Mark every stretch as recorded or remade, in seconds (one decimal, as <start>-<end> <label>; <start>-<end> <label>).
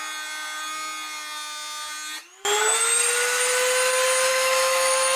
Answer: 0.0-4.3 recorded; 4.3-5.2 remade